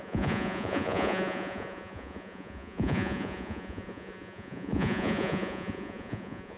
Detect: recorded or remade remade